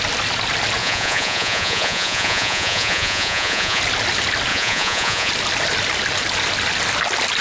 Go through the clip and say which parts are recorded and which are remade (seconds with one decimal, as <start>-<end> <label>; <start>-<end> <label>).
0.0-0.8 recorded; 0.8-3.8 remade; 3.8-4.5 recorded; 4.5-5.3 remade; 5.3-7.4 recorded